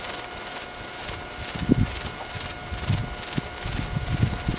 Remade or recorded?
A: recorded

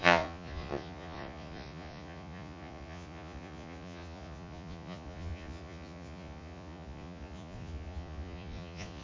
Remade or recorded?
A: remade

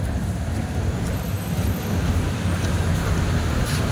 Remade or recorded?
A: recorded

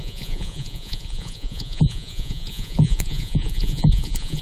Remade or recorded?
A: remade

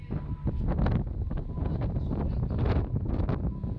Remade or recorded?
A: recorded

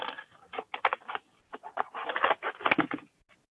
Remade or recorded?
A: recorded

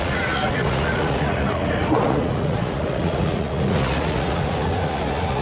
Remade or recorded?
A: remade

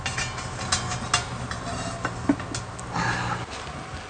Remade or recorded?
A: recorded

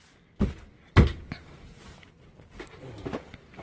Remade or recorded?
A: recorded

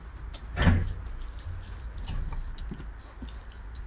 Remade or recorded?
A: recorded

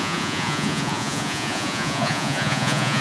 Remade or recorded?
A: remade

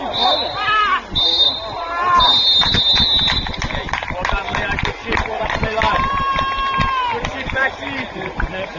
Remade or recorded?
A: recorded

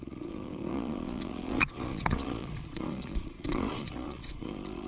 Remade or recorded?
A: remade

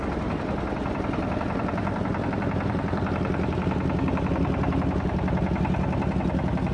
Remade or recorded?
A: recorded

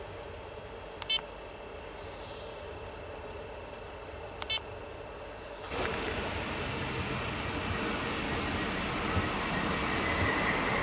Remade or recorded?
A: recorded